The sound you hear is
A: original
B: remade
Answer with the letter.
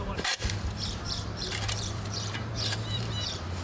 B